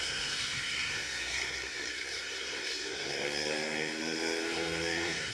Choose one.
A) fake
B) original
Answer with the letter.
A